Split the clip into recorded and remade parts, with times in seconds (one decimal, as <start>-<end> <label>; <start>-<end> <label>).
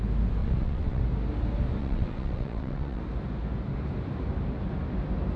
0.0-0.4 recorded; 0.4-1.0 remade; 1.0-1.8 recorded; 1.8-3.0 remade; 3.0-5.4 recorded